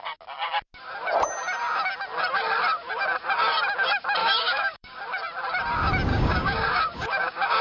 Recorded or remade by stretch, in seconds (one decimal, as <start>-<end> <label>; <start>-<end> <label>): 0.0-4.2 recorded; 4.2-5.0 remade; 5.0-6.1 recorded; 6.1-7.6 remade